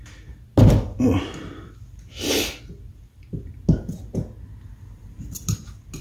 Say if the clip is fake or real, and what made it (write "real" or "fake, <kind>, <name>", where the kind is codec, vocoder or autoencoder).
real